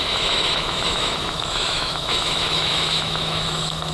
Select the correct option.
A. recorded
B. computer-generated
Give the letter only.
B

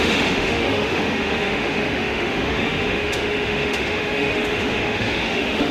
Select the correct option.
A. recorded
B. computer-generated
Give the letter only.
B